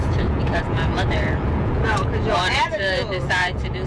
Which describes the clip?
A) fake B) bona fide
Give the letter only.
A